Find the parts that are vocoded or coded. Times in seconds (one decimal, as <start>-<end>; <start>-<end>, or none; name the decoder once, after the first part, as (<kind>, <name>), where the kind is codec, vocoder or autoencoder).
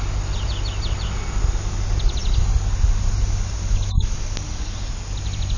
none